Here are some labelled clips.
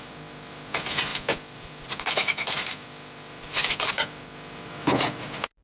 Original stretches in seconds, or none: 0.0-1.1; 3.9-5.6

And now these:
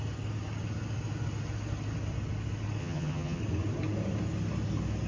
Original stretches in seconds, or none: 0.0-2.8; 3.4-5.1

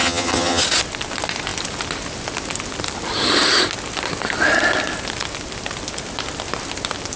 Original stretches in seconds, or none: 0.6-7.2

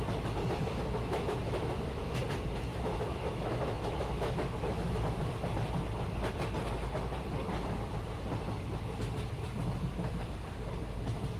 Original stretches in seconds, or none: 0.0-0.6; 2.2-2.7; 5.3-11.4

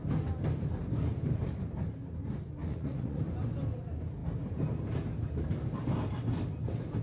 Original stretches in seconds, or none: 0.0-2.6; 3.2-7.0